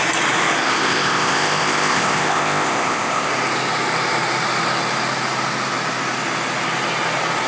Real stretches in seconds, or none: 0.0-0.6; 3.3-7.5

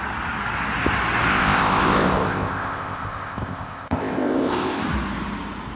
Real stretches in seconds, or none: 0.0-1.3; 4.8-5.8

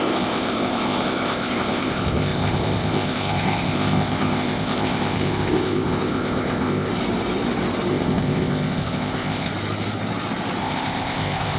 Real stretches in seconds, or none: 6.9-7.9; 9.5-10.6

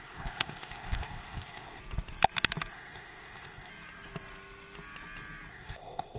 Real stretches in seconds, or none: 1.8-2.7; 3.7-5.5